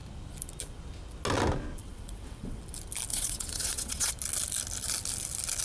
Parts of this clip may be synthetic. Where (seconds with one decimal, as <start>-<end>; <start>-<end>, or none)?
1.8-2.6; 3.1-4.1